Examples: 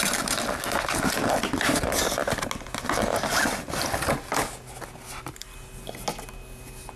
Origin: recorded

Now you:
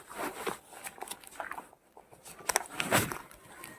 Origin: recorded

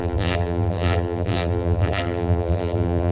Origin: remade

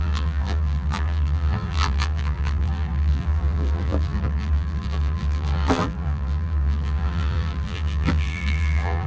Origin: remade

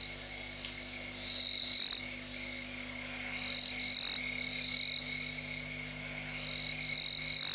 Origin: recorded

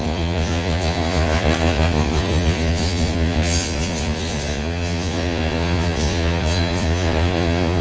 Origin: remade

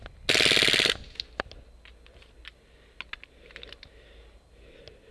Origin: recorded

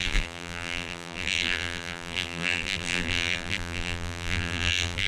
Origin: remade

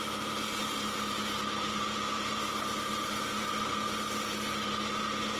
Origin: recorded